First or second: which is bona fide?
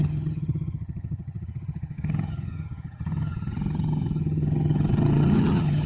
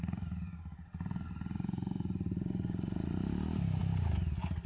second